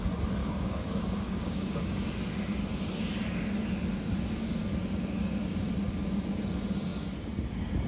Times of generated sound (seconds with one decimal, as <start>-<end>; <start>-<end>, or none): 0.4-2.1